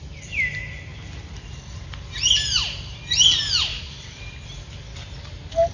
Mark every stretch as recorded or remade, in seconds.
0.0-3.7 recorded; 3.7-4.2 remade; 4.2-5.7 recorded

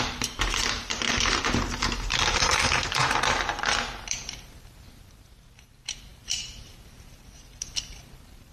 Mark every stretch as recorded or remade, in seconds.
0.0-8.5 remade

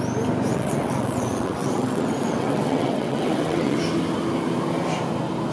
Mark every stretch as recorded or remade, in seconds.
0.0-0.5 recorded; 0.5-3.8 remade; 3.8-5.5 recorded

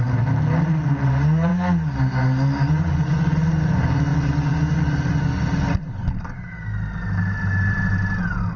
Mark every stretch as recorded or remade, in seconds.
0.0-8.6 recorded

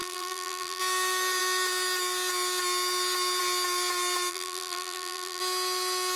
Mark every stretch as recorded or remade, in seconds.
0.0-0.8 remade; 0.8-4.3 recorded; 4.3-5.4 remade; 5.4-6.2 recorded

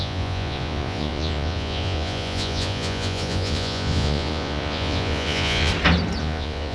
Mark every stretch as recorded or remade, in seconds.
0.0-5.7 remade; 5.7-6.2 recorded; 6.2-6.7 remade

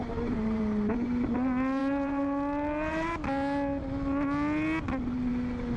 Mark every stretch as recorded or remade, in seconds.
0.0-0.9 remade; 0.9-5.8 recorded